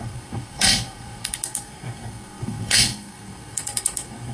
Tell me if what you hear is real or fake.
fake